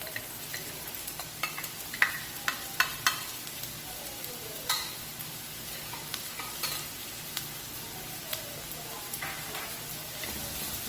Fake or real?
real